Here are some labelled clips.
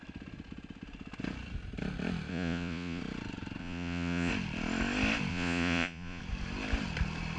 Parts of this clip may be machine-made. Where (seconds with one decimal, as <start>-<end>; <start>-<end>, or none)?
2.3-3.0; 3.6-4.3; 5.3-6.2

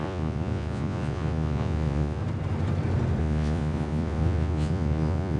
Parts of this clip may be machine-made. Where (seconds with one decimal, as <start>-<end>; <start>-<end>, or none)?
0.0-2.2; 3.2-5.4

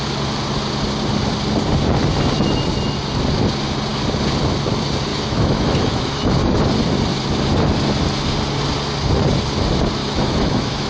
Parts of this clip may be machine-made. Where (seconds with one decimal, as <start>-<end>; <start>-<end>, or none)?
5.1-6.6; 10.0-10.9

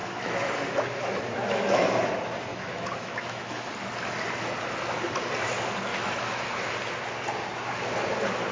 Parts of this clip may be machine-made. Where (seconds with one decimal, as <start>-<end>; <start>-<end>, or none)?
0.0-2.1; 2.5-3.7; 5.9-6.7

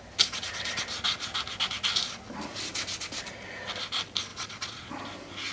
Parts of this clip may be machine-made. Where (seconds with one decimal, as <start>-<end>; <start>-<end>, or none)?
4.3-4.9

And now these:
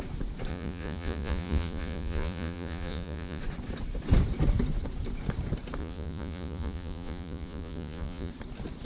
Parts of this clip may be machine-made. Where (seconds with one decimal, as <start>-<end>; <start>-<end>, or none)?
0.5-3.4; 5.8-8.3

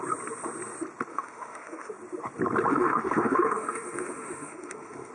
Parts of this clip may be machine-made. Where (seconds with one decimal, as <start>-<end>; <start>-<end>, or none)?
1.1-1.9; 2.7-5.1

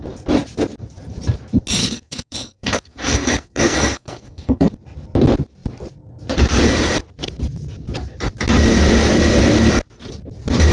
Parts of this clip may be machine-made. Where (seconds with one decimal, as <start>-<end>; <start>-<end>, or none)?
1.8-4.7